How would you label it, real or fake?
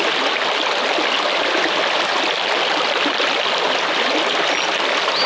real